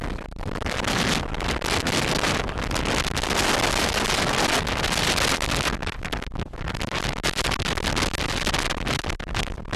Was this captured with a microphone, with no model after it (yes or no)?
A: yes